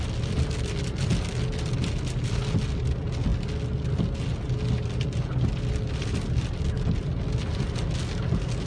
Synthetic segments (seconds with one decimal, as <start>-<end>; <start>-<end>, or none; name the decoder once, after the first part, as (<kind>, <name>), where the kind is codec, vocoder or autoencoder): none